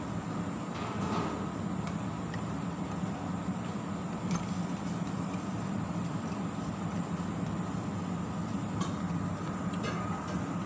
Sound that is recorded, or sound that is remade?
recorded